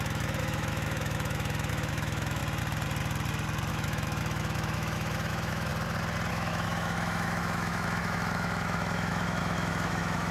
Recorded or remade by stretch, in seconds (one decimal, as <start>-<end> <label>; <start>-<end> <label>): 0.0-2.4 remade; 2.4-3.7 recorded; 3.7-5.7 remade; 5.7-6.3 recorded; 6.3-10.3 remade